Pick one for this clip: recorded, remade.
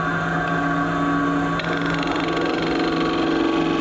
recorded